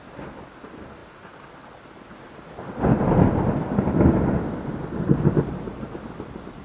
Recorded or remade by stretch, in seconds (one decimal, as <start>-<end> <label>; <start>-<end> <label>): 0.0-6.6 recorded